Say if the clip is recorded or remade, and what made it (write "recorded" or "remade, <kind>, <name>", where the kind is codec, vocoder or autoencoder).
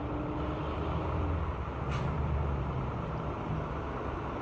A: recorded